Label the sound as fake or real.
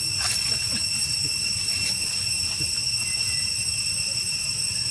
real